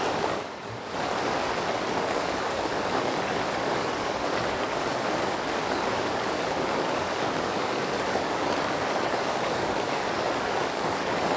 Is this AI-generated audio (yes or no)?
yes